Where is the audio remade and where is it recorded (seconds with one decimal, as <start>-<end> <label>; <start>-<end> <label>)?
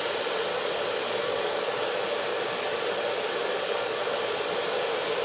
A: 0.0-0.5 recorded; 0.5-1.9 remade; 1.9-2.3 recorded; 2.3-2.8 remade; 2.8-3.4 recorded; 3.4-4.0 remade; 4.0-5.2 recorded